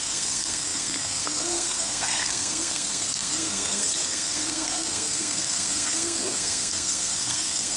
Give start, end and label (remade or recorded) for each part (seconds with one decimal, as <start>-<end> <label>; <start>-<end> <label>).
0.0-7.8 remade